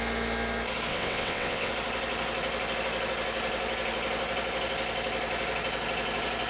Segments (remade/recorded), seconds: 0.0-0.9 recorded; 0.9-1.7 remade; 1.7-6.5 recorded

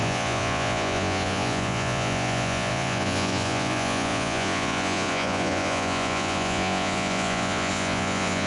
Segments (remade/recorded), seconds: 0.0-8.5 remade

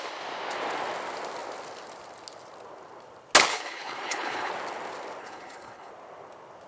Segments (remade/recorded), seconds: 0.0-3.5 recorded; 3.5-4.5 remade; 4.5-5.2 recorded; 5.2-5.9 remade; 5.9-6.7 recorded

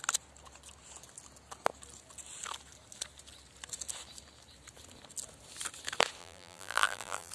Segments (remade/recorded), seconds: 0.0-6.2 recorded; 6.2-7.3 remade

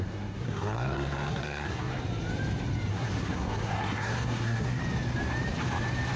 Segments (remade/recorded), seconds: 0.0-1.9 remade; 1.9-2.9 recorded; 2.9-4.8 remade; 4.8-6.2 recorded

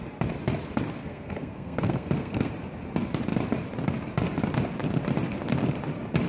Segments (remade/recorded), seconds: 0.0-1.0 recorded; 1.0-2.5 remade; 2.5-6.3 recorded

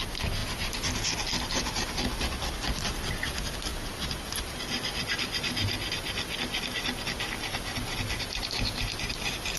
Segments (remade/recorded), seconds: 0.0-9.6 recorded

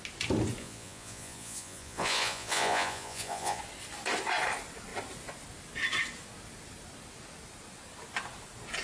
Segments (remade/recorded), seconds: 0.0-0.6 recorded; 0.6-3.6 remade; 3.6-8.8 recorded